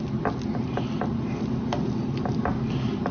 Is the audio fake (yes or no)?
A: no